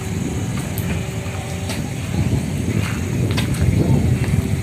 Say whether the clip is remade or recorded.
recorded